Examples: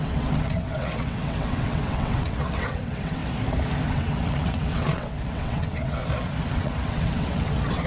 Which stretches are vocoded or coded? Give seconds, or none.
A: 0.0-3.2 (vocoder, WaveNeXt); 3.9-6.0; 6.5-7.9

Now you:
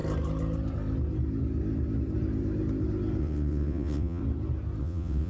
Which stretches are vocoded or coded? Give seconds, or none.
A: 3.2-4.2 (vocoder, WaveNeXt); 4.8-5.3